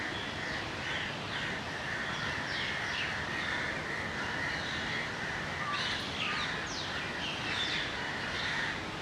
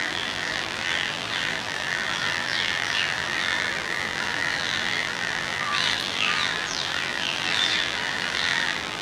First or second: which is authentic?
first